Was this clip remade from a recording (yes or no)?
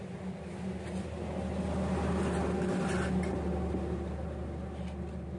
no